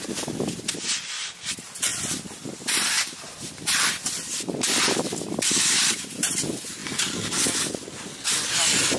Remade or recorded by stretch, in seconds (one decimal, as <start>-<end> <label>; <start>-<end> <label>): 0.0-1.9 recorded; 1.9-6.3 remade; 6.3-9.0 recorded